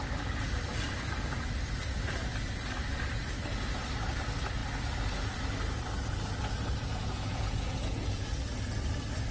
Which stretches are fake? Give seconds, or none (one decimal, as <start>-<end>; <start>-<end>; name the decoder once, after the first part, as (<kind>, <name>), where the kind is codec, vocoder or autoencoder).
6.9-8.3 (vocoder, Vocos)